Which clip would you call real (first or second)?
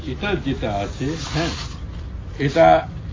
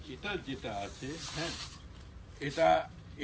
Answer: first